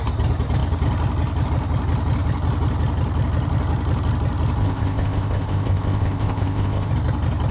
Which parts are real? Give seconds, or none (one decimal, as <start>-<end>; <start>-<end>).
0.0-4.6; 6.9-7.5